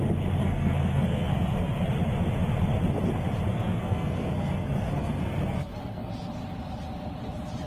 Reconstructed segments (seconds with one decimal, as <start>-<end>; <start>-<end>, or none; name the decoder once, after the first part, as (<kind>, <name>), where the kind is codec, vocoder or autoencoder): 0.4-1.9 (codec, SNAC); 3.5-6.1